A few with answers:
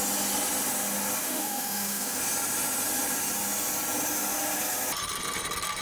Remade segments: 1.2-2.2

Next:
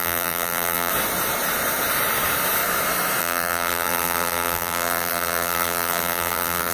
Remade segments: 0.0-0.9; 3.2-6.7